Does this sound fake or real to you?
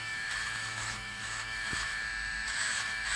fake